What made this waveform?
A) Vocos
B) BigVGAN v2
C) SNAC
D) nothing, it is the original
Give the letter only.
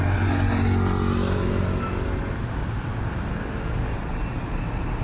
D